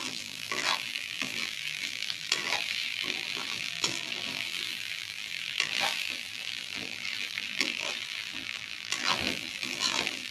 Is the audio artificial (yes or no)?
yes